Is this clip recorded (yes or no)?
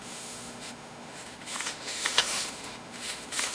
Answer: no